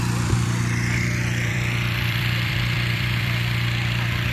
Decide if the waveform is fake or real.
fake